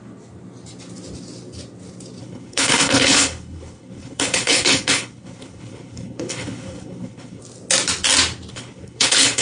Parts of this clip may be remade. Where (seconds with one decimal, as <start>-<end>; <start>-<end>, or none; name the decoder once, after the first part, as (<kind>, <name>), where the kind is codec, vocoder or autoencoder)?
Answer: 2.2-7.4 (codec, HILCodec); 8.5-9.4